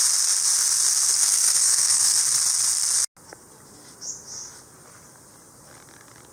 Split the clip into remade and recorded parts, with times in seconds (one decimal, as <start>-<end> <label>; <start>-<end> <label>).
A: 0.0-1.2 recorded; 1.2-2.2 remade; 2.2-6.3 recorded